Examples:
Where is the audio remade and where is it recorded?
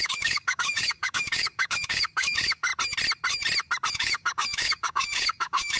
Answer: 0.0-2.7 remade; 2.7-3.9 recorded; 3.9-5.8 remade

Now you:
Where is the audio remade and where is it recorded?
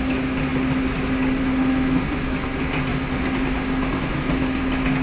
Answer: 0.0-5.0 recorded